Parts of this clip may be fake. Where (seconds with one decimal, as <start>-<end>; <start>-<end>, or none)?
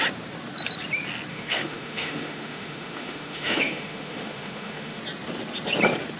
1.3-5.0